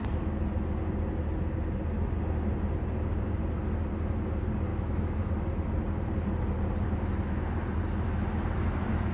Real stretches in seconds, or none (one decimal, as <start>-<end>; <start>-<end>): 0.0-4.7; 5.3-9.1